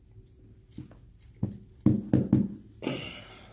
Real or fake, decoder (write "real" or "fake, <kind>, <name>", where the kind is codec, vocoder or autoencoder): real